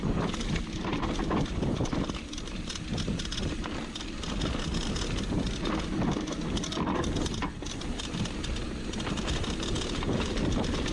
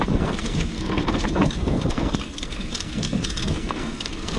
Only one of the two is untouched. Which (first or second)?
first